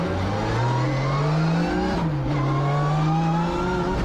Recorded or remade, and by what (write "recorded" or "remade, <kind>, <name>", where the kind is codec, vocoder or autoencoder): recorded